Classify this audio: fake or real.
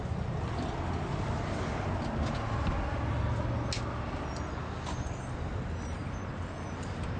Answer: real